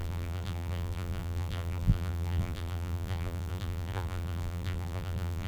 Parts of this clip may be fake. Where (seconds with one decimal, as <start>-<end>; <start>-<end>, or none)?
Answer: 0.0-5.5